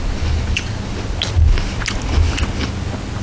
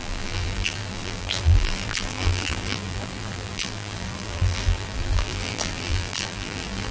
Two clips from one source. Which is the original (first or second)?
first